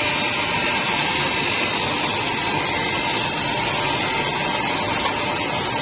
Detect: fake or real real